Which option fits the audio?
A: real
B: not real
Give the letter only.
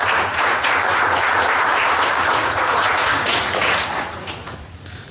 B